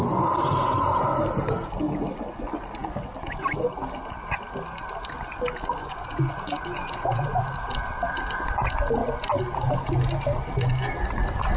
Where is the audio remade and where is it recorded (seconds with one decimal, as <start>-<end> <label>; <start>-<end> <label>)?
0.0-5.8 recorded; 5.8-7.5 remade; 7.5-11.6 recorded